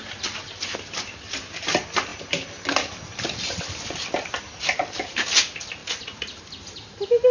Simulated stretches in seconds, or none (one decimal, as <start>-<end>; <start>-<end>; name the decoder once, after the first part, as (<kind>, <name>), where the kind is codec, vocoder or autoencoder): none